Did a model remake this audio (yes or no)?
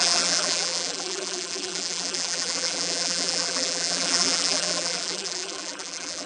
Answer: yes